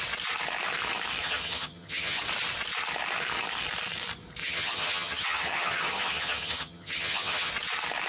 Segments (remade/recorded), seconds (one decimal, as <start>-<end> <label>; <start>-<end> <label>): 0.0-1.2 recorded; 1.2-2.2 remade; 2.2-4.4 recorded; 4.4-7.5 remade; 7.5-8.1 recorded